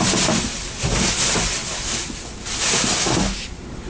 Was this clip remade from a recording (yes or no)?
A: no